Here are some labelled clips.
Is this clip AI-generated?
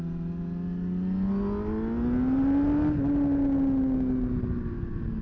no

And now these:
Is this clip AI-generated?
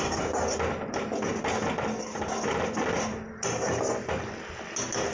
no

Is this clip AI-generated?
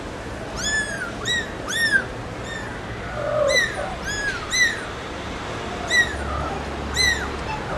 no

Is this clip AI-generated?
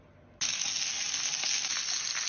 no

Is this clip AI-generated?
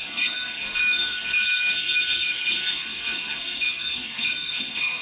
yes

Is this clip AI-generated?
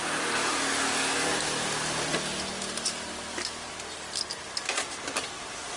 no